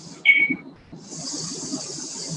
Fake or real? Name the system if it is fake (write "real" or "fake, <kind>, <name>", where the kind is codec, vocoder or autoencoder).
real